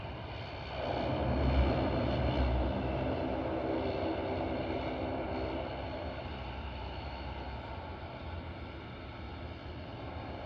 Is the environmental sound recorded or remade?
recorded